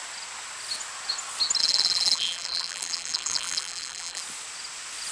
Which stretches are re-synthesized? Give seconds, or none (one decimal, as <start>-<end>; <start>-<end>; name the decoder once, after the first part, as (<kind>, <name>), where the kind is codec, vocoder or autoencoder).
1.6-4.2 (vocoder, BigVGAN v2)